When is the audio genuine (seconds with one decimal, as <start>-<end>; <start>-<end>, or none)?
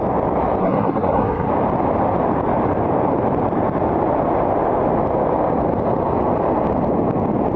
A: 0.0-0.6; 1.5-7.6